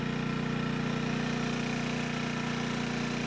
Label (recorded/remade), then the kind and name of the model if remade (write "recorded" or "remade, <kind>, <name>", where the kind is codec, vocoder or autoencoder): recorded